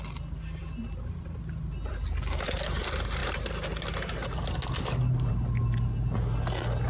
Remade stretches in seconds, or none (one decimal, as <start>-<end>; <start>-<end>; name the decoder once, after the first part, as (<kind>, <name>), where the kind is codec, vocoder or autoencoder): none